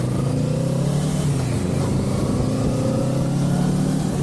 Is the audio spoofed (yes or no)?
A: no